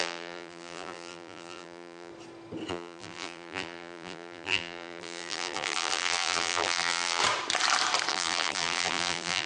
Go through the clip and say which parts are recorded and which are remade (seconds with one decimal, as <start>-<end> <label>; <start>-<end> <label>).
0.0-2.1 remade; 2.1-2.7 recorded; 2.7-7.2 remade; 7.2-8.1 recorded; 8.1-9.5 remade